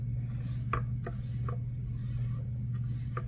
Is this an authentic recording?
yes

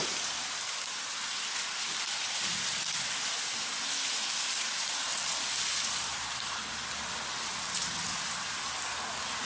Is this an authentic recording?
yes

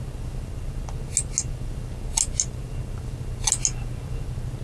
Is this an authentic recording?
yes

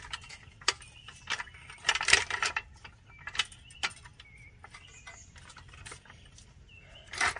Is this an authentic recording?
yes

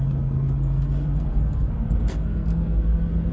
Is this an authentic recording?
no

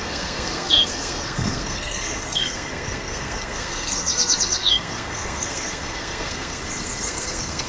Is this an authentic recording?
no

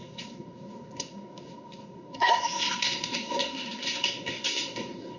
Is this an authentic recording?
no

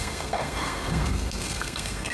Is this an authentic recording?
no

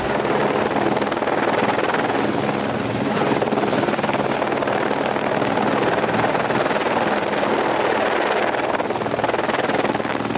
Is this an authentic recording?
yes